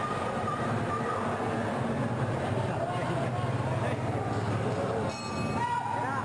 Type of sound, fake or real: real